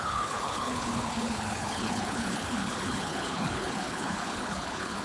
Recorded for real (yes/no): no